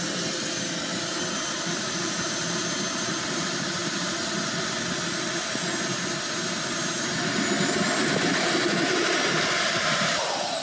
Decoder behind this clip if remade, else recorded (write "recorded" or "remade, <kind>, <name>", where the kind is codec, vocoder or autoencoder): recorded